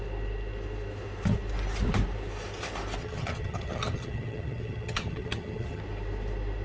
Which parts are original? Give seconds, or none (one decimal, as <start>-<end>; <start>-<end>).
0.0-3.0; 5.8-6.6